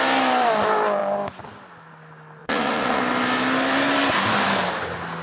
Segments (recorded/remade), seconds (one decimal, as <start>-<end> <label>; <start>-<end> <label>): 0.0-2.4 recorded; 2.4-3.0 remade; 3.0-5.2 recorded